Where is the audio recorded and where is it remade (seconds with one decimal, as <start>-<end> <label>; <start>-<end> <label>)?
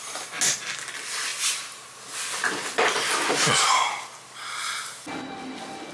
0.0-5.9 recorded